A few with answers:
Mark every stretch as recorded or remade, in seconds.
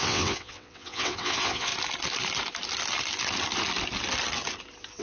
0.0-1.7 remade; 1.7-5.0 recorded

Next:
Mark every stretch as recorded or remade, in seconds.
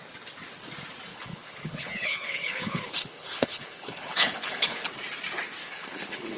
0.0-1.1 recorded; 1.1-4.9 remade; 4.9-5.6 recorded; 5.6-6.4 remade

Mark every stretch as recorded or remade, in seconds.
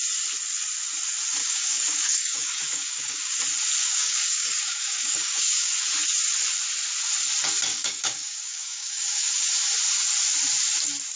0.0-1.4 recorded; 1.4-3.4 remade; 3.4-3.8 recorded; 3.8-5.7 remade; 5.7-7.7 recorded; 7.7-9.5 remade; 9.5-11.2 recorded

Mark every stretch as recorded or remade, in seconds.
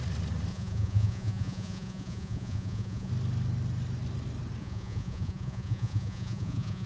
0.0-0.5 recorded; 0.5-3.1 remade; 3.1-4.6 recorded; 4.6-6.9 remade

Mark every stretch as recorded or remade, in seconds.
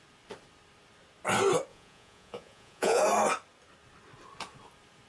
0.0-1.7 recorded; 1.7-3.0 remade; 3.0-5.1 recorded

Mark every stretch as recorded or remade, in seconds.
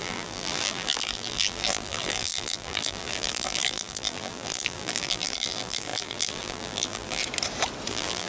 0.0-7.2 remade; 7.2-7.9 recorded; 7.9-8.3 remade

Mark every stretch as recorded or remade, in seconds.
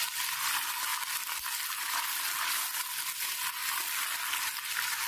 0.0-5.1 recorded